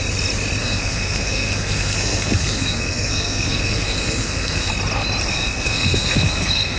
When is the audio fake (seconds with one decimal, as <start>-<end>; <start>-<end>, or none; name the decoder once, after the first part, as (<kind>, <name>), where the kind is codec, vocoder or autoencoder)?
0.6-4.7 (codec, SNAC); 5.3-6.8